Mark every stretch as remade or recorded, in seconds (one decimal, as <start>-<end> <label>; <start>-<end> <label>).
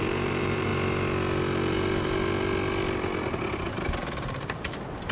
0.0-0.7 remade; 0.7-3.8 recorded; 3.8-5.1 remade